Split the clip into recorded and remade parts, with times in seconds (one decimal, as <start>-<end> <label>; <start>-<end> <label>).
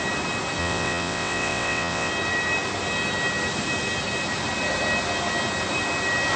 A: 0.0-0.6 recorded; 0.6-2.1 remade; 2.1-6.4 recorded